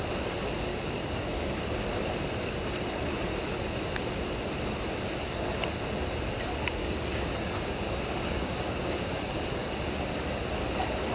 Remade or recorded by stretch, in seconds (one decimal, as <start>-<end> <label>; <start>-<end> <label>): 0.0-0.7 recorded; 0.7-1.5 remade; 1.5-6.8 recorded; 6.8-9.7 remade; 9.7-11.1 recorded